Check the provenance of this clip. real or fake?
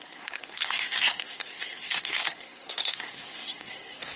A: fake